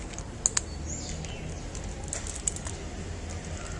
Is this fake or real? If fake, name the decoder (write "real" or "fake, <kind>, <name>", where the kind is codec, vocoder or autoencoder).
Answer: real